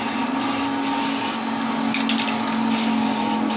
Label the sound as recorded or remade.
recorded